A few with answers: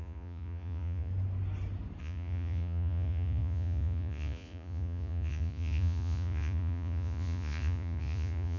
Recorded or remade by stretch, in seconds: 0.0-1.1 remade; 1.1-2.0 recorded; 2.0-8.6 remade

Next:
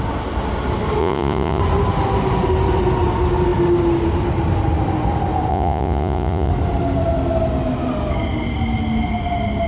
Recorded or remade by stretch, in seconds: 0.0-1.0 recorded; 1.0-1.6 remade; 1.6-5.5 recorded; 5.5-6.5 remade; 6.5-9.7 recorded

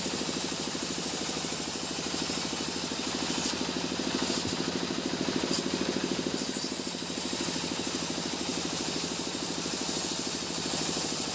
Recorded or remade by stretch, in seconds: 0.0-11.3 recorded

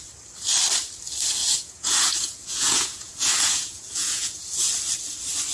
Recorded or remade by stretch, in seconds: 0.0-1.4 recorded; 1.4-4.7 remade; 4.7-5.5 recorded

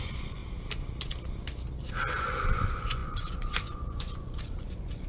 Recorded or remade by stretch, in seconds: 0.0-0.4 remade; 0.4-1.8 recorded; 1.8-5.1 remade

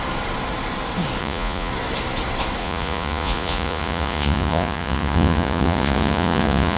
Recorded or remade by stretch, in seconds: 0.0-1.2 recorded; 1.2-1.7 remade; 1.7-2.6 recorded; 2.6-6.8 remade

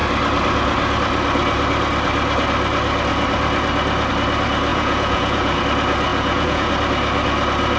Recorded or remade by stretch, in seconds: 0.0-4.7 recorded; 4.7-5.6 remade; 5.6-6.1 recorded; 6.1-6.7 remade; 6.7-7.8 recorded